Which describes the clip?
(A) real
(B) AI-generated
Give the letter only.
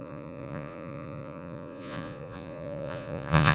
B